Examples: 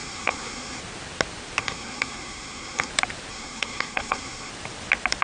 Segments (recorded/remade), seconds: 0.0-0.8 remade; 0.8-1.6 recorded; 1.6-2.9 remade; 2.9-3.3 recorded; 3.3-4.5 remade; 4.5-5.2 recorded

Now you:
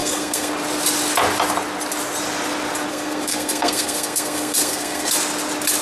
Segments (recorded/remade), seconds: 0.0-0.5 remade; 0.5-2.9 recorded; 2.9-5.1 remade; 5.1-5.8 recorded

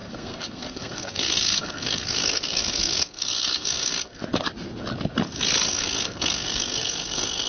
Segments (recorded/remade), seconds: 0.0-4.2 remade; 4.2-5.7 recorded; 5.7-7.5 remade

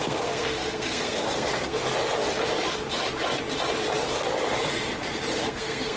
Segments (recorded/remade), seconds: 0.0-1.8 remade; 1.8-5.4 recorded; 5.4-6.0 remade